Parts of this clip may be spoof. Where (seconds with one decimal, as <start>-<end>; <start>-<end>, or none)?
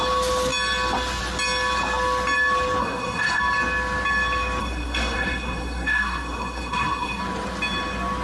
2.8-3.4; 4.6-7.2